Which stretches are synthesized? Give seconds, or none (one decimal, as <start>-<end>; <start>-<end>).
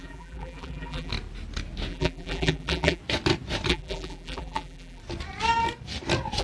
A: 0.0-1.1; 1.9-3.0; 3.7-5.0